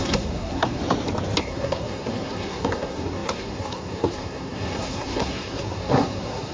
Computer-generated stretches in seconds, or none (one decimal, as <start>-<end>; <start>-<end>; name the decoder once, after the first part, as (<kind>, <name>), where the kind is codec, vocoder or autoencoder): 0.0-0.8 (codec, SNAC); 1.4-6.5